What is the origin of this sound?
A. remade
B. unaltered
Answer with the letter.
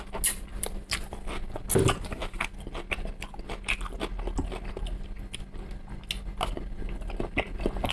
B